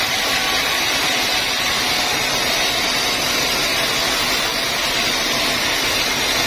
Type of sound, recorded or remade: recorded